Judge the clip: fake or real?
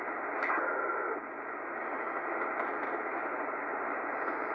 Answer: real